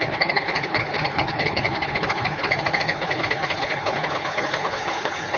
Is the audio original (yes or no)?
no